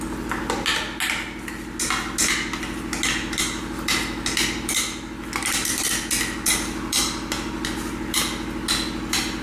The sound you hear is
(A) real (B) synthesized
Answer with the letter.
A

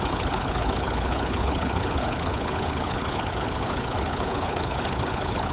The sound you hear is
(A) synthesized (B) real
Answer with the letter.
A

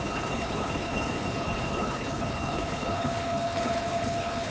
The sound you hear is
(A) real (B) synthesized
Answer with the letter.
B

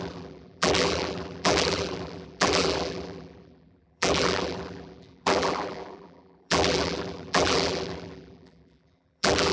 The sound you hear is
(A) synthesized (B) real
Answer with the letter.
A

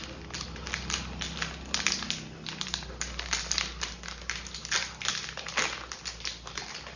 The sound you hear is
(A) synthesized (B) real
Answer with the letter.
B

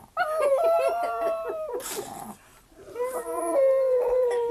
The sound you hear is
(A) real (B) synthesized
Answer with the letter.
B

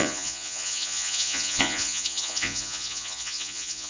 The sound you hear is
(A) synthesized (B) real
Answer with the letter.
A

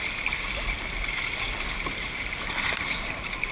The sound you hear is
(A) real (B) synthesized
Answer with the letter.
B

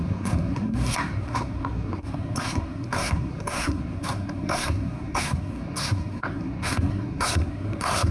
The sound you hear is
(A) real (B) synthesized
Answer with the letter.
B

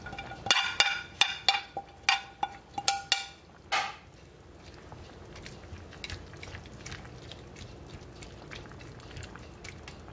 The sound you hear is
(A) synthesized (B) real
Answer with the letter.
B